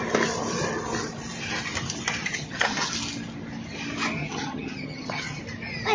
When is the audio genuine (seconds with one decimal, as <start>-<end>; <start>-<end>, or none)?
0.0-2.2; 2.9-4.2; 5.4-5.9